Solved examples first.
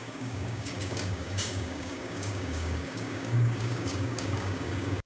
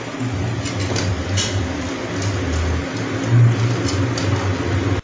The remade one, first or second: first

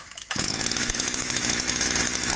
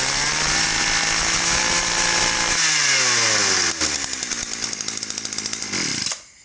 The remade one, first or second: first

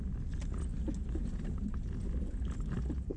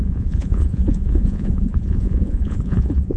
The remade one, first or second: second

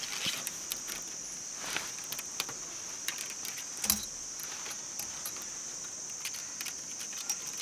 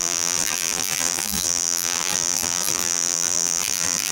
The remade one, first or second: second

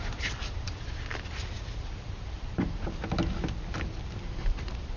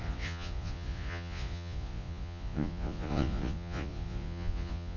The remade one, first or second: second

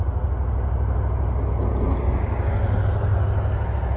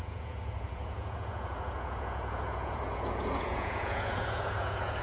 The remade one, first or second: second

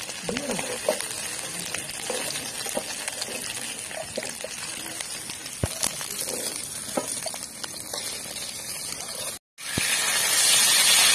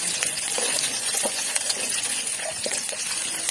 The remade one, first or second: second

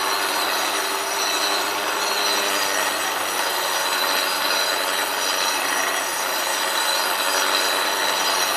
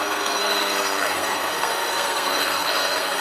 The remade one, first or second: second